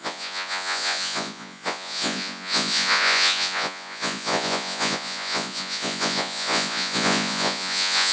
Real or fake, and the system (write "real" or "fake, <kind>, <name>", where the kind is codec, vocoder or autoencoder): fake, vocoder, Vocos